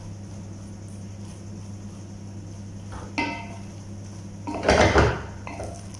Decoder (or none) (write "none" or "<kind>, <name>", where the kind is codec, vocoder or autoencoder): none